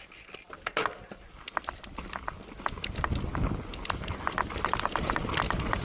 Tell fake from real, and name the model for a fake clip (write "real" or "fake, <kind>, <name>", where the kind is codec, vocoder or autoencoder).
real